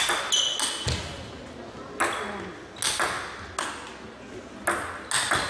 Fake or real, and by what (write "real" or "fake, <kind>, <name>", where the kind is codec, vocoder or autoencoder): real